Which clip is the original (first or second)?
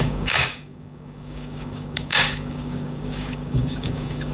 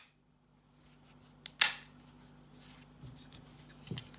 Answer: second